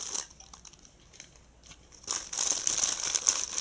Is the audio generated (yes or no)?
no